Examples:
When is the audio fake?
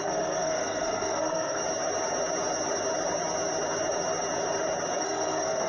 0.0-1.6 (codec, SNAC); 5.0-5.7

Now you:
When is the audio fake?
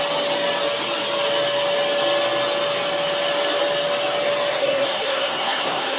4.5-6.0 (codec, SNAC)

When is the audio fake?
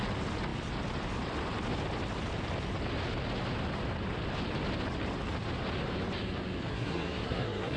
6.7-7.8 (codec, SNAC)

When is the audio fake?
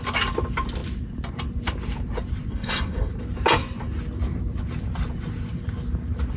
2.5-3.1 (codec, SNAC)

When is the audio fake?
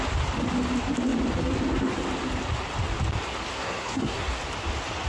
3.5-4.4 (codec, SNAC)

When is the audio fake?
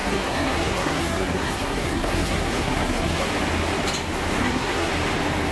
0.0-3.3 (codec, SNAC); 4.4-4.9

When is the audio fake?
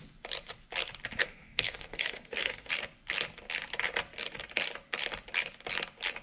1.2-2.7 (codec, SNAC)